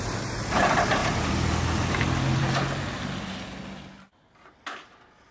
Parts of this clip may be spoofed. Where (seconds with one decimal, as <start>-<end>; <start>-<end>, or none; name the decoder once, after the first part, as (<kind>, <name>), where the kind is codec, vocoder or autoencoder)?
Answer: none